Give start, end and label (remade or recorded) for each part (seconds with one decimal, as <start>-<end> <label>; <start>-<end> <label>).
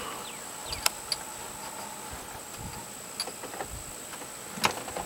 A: 0.0-5.1 recorded